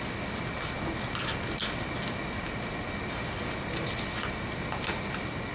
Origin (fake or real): real